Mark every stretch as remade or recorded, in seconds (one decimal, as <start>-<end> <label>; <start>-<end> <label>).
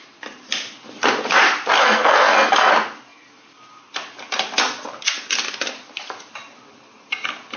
0.0-1.8 recorded; 1.8-2.7 remade; 2.7-7.6 recorded